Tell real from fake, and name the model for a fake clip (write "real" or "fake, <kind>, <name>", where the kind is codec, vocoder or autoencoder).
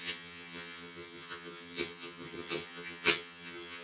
fake, vocoder, HiFi-GAN